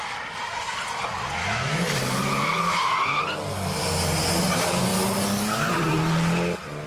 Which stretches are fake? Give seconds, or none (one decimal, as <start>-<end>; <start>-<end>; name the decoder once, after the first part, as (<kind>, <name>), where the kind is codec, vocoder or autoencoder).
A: 1.4-3.2 (autoencoder, DAC-VAE)